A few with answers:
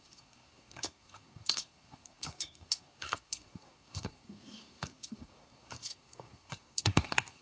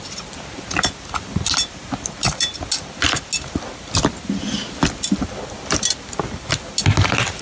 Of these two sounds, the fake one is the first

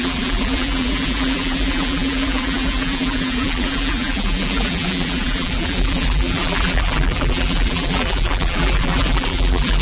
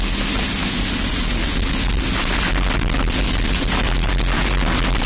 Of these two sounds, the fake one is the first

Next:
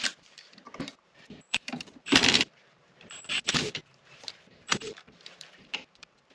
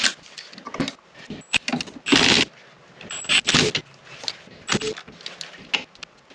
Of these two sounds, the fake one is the first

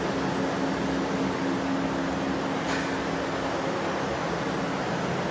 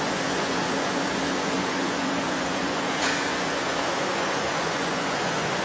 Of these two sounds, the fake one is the second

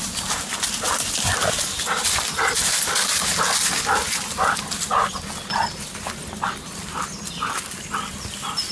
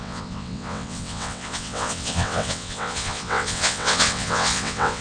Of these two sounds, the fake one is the second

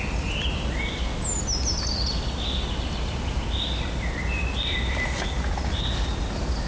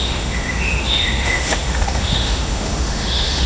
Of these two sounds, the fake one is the second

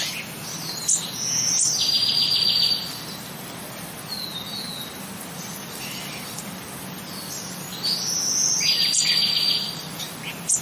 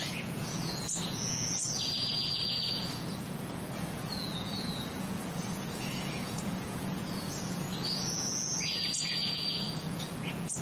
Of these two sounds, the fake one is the second